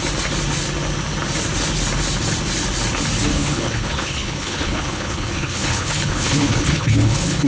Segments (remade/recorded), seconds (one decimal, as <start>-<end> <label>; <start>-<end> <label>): 0.0-3.3 recorded; 3.3-7.5 remade